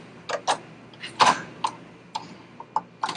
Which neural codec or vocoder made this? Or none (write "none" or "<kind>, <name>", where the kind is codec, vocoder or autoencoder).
none